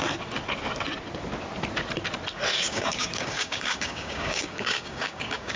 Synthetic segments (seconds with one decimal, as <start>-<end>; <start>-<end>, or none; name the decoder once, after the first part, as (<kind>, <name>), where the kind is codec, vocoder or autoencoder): 2.5-5.6 (codec, DAC)